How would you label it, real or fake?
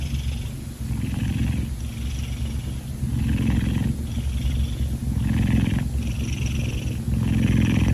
real